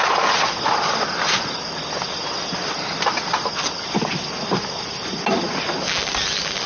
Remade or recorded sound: recorded